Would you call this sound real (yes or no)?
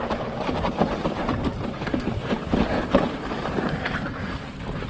no